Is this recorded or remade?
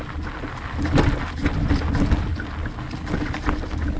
recorded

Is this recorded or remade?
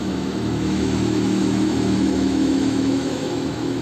remade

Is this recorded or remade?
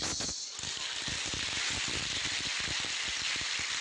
recorded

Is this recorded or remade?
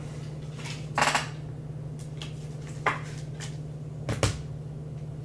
recorded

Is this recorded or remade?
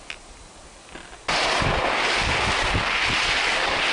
recorded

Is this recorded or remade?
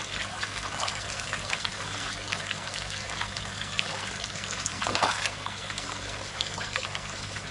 remade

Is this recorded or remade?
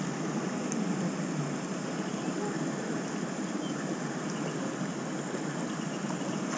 recorded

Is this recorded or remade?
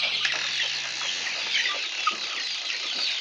recorded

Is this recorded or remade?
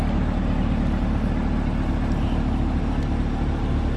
recorded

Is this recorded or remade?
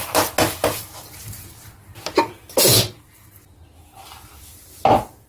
recorded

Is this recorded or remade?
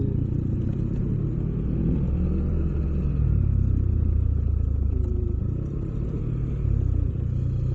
recorded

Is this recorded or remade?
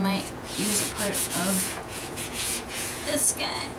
remade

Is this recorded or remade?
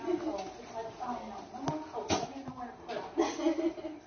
recorded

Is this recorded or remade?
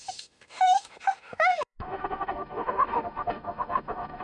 remade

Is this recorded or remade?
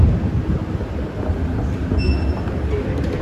recorded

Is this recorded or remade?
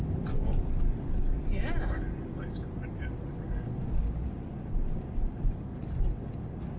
recorded